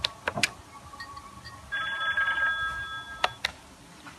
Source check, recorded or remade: recorded